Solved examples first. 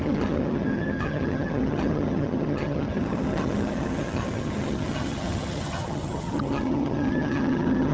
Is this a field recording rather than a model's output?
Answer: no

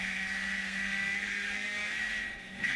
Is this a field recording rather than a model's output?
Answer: no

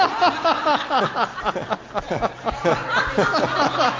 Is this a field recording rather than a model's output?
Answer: yes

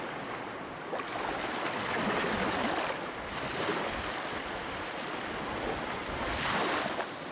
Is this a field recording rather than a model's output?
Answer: yes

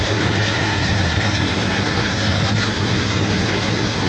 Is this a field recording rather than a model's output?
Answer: no